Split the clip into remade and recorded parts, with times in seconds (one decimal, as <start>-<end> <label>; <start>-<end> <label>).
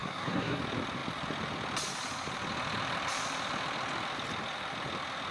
0.0-0.6 remade; 0.6-5.3 recorded